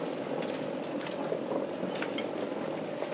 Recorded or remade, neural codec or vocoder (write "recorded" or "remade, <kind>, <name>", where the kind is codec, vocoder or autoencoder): recorded